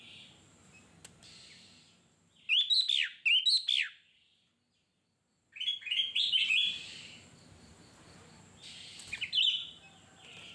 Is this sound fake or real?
real